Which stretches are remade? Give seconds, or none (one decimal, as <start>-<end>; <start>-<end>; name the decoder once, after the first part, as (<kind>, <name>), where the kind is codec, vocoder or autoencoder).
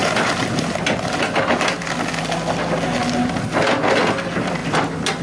none